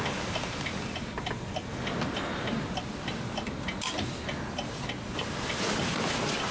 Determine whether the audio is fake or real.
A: real